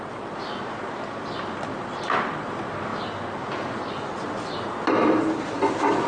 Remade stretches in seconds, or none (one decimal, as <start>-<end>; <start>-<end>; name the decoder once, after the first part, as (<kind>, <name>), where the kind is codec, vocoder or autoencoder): none